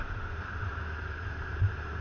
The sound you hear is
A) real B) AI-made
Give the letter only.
B